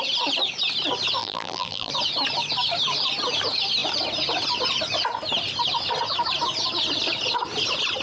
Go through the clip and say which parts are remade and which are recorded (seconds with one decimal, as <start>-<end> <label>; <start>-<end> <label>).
0.0-1.2 recorded; 1.2-1.9 remade; 1.9-8.0 recorded